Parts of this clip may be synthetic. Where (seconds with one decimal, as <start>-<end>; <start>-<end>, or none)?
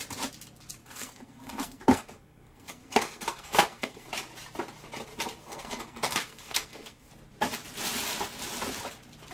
0.8-4.1; 5.4-7.1